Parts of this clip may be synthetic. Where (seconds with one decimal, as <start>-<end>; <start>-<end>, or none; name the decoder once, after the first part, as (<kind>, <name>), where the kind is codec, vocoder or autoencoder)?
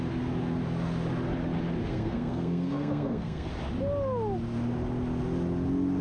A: 1.9-3.5 (codec, SNAC)